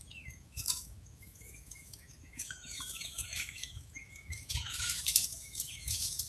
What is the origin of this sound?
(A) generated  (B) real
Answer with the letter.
A